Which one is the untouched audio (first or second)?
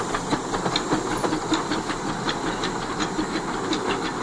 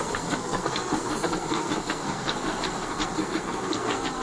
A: first